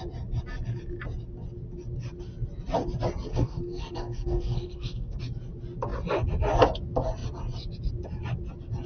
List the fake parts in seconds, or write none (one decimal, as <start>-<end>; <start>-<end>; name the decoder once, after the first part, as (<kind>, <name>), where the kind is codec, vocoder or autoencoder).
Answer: 3.3-5.2 (codec, SNAC)

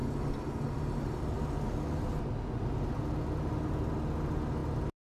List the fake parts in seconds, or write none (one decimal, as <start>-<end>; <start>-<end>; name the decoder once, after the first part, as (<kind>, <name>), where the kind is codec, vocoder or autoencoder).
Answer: none

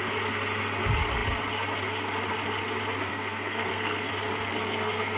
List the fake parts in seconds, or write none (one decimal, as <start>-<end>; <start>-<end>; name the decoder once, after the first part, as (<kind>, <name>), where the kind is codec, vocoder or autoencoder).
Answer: 3.1-4.1 (codec, SNAC); 4.5-5.2

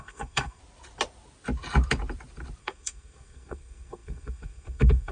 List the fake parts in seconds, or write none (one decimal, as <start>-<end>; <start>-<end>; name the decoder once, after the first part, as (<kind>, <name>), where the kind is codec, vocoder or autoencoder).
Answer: 0.0-0.6 (codec, SNAC); 2.6-5.1

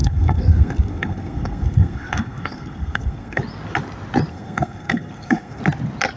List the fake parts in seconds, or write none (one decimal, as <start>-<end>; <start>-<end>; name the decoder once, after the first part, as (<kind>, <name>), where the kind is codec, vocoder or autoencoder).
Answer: 0.0-3.4 (codec, SNAC); 4.3-5.6

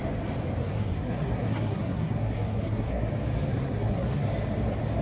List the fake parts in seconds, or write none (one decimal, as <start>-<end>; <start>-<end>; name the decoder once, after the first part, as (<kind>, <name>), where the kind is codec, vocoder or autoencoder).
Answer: 0.6-3.1 (codec, SNAC); 3.5-4.3

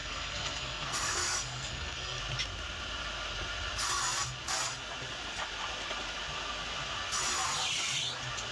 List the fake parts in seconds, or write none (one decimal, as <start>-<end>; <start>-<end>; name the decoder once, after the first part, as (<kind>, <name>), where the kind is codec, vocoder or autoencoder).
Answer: 0.0-2.2 (codec, SNAC)